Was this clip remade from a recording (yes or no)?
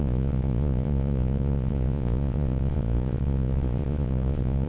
yes